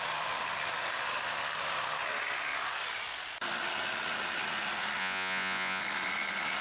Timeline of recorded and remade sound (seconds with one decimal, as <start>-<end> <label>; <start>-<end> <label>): 0.0-5.0 recorded; 5.0-5.8 remade; 5.8-6.6 recorded